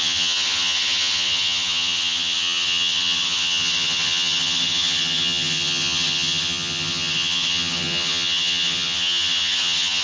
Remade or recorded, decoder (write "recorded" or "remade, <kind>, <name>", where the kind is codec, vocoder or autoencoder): remade, vocoder, HiFi-GAN